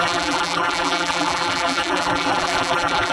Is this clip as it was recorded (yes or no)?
no